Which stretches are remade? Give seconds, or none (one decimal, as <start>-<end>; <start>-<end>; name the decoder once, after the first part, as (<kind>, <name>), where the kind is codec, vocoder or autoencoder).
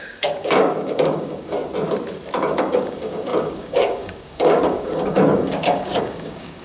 0.0-1.6 (codec, DAC); 2.6-6.6